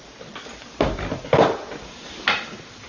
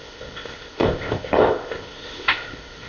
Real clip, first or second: first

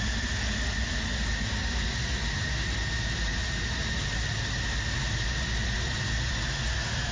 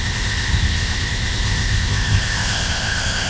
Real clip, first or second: first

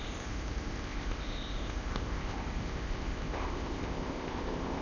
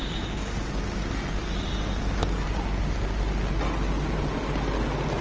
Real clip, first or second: second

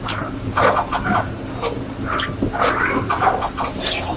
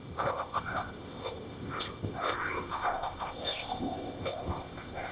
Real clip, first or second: first